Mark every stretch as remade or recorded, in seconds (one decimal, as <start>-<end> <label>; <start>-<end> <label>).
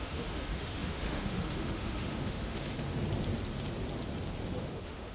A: 0.0-2.9 remade; 2.9-4.6 recorded; 4.6-5.1 remade